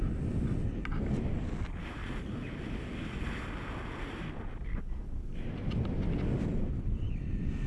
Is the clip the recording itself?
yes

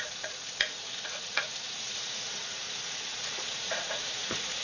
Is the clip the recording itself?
no